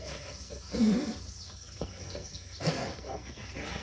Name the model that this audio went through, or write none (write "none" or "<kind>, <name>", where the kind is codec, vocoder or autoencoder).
codec, SNAC